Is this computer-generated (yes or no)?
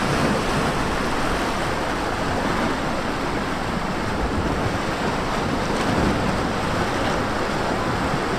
no